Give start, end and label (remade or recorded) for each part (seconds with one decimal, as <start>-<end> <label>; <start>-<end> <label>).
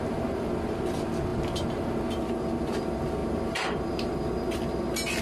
0.0-3.2 recorded; 3.2-4.1 remade; 4.1-5.2 recorded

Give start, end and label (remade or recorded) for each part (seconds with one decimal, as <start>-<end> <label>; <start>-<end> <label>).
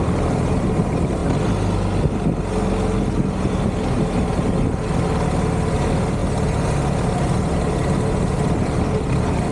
0.0-1.2 remade; 1.2-5.7 recorded; 5.7-6.2 remade; 6.2-7.1 recorded; 7.1-9.5 remade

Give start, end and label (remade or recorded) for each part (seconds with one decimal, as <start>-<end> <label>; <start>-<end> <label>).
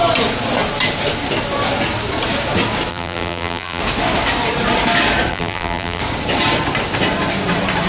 0.0-2.9 recorded; 2.9-3.8 remade; 3.8-5.3 recorded; 5.3-6.0 remade; 6.0-7.9 recorded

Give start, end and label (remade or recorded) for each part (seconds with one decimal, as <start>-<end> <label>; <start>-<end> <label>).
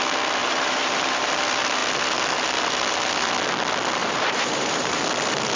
0.0-0.4 recorded; 0.4-1.3 remade; 1.3-4.0 recorded; 4.0-5.0 remade; 5.0-5.6 recorded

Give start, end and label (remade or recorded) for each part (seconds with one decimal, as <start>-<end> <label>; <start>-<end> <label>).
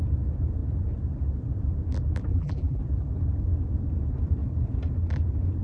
0.0-2.3 recorded; 2.3-2.8 remade; 2.8-5.6 recorded